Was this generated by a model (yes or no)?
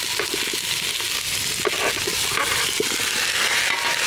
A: no